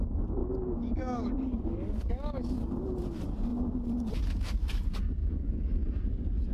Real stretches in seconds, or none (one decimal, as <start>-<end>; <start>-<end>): 0.0-0.4; 2.7-5.2; 5.8-6.5